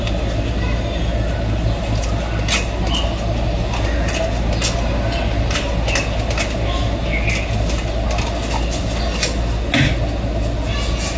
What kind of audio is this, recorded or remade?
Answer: recorded